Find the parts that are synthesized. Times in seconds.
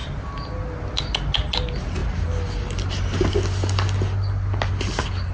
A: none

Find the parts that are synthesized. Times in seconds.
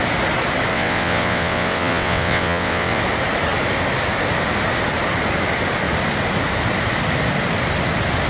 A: 0.7-3.0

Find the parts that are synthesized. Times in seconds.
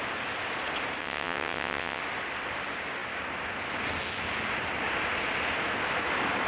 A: 1.0-2.0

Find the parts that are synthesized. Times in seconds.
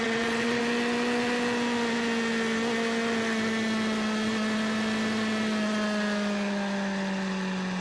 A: 0.0-0.6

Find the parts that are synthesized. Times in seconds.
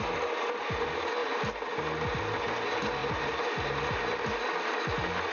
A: none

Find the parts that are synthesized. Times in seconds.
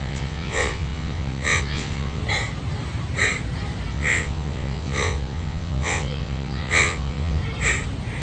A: 0.0-2.2; 3.9-7.4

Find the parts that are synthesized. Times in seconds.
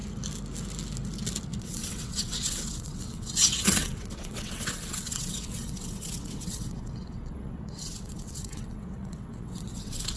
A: 1.6-10.2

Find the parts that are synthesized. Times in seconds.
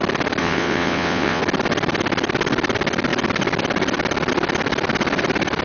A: 0.4-1.4